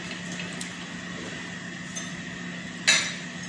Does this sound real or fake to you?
real